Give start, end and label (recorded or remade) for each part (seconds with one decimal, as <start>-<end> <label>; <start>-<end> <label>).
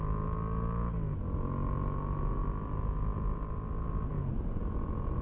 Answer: 0.0-5.2 recorded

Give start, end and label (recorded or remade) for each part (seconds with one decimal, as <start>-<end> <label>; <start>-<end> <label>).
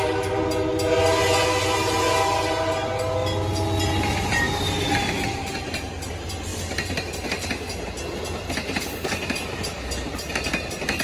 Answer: 0.0-11.0 recorded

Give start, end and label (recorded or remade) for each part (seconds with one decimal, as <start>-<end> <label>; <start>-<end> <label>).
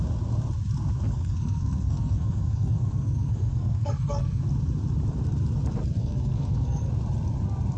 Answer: 0.0-1.1 recorded; 1.1-4.4 remade; 4.4-6.0 recorded; 6.0-6.9 remade; 6.9-7.8 recorded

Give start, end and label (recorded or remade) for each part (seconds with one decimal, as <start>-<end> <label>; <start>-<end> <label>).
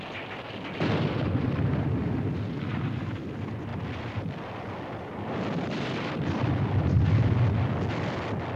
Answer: 0.0-3.7 recorded; 3.7-7.0 remade; 7.0-8.6 recorded